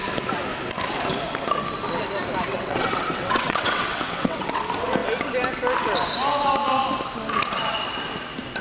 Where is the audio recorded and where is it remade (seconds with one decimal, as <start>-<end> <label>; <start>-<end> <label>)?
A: 0.0-2.5 recorded; 2.5-4.6 remade; 4.6-8.6 recorded